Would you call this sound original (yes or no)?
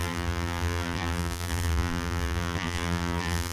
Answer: no